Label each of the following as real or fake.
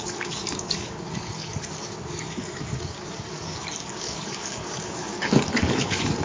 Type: fake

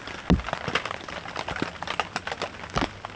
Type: real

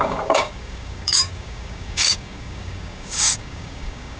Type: fake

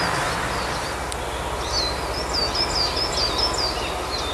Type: real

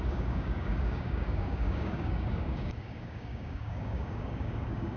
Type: fake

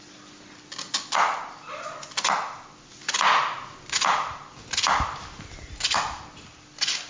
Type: real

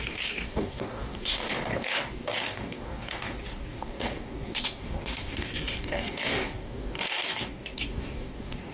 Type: fake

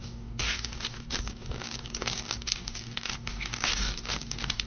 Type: fake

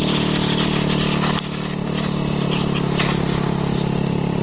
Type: real